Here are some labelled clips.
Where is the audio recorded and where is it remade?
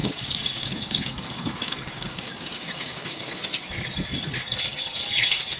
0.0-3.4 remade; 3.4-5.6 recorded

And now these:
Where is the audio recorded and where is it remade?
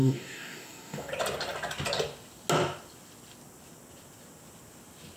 0.0-1.1 remade; 1.1-5.2 recorded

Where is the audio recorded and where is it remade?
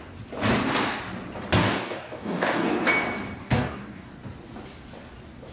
0.0-1.6 recorded; 1.6-2.7 remade; 2.7-3.4 recorded; 3.4-4.1 remade; 4.1-5.5 recorded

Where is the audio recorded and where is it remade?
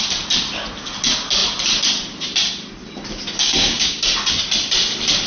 0.0-3.4 recorded; 3.4-4.0 remade; 4.0-5.3 recorded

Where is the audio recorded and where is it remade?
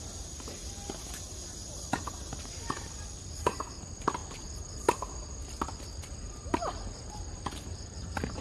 0.0-8.4 recorded